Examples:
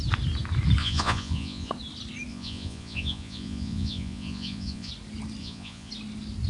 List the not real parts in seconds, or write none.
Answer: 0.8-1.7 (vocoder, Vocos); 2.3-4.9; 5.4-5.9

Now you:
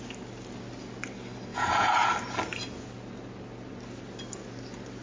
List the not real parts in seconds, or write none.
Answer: 1.5-2.1 (vocoder, Vocos)

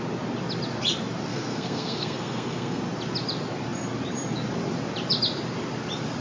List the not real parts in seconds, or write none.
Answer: 1.3-2.8 (codec, SNAC)